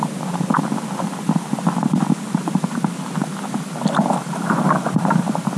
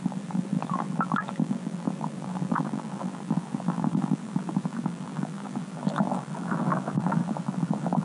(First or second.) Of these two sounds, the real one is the first